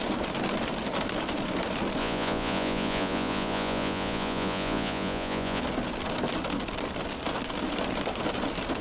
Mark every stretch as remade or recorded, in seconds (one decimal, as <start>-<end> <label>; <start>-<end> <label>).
0.0-2.0 recorded; 2.0-5.6 remade; 5.6-8.8 recorded